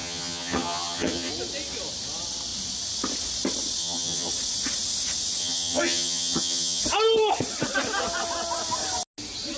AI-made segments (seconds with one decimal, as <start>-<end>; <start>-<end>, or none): 0.0-1.3; 3.8-4.3; 5.4-6.8